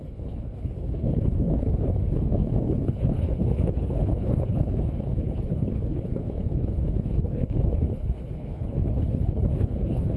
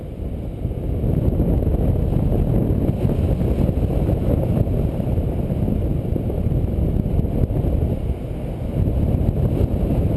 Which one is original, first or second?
second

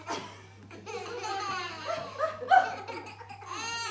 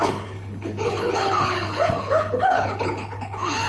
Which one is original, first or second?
first